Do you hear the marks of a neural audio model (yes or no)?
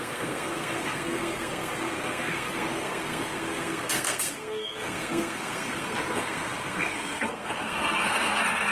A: yes